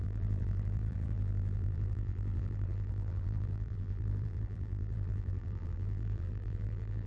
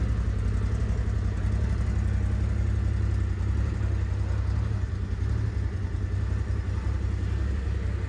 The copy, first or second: first